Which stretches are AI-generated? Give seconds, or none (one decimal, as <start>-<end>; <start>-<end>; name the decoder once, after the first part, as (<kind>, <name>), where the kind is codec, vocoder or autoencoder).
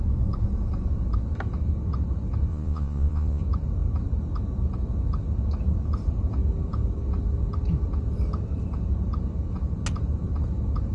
2.5-3.4 (vocoder, Vocos)